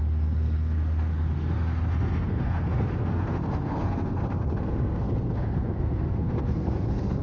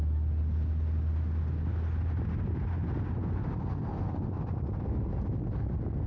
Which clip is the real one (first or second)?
second